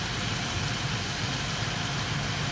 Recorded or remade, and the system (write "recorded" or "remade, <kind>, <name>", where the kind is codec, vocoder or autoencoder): recorded